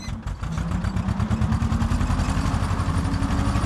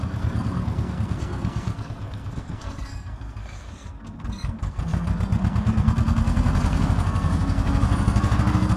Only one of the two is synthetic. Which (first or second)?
second